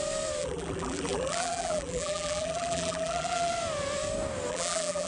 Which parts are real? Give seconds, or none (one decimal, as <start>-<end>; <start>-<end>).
0.0-0.4; 3.5-4.5